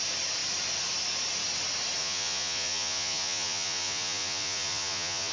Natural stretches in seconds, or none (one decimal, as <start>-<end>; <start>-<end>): 0.0-2.0